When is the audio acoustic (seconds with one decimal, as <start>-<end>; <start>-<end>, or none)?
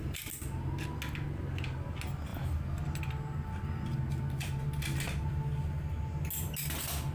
0.0-7.1